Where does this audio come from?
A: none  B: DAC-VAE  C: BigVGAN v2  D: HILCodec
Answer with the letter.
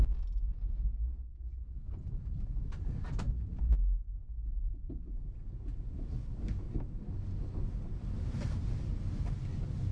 A